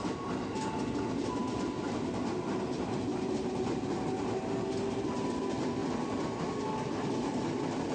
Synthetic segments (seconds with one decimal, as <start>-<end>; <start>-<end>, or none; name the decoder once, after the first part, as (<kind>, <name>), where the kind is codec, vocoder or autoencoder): none

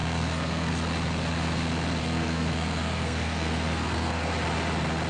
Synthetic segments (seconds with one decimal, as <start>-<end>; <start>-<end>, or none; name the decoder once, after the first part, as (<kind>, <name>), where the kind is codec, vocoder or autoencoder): 0.0-0.7 (codec, SNAC); 2.0-4.3